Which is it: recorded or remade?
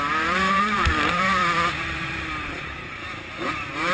remade